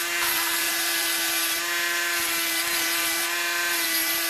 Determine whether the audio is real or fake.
fake